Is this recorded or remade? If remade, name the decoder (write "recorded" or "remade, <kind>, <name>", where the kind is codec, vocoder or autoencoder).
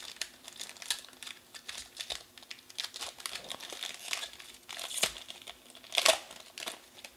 recorded